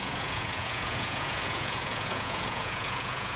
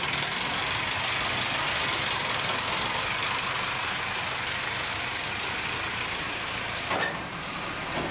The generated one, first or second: first